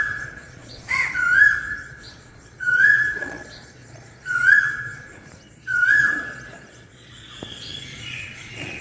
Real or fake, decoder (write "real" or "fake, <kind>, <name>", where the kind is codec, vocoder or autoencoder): fake, vocoder, Vocos